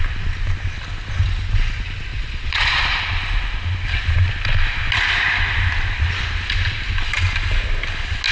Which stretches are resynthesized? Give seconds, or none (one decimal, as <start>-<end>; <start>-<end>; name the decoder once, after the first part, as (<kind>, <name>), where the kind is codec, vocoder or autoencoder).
2.1-3.0 (vocoder, Vocos)